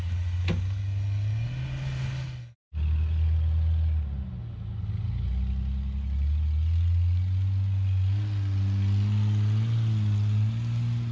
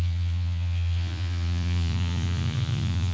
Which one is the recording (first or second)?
first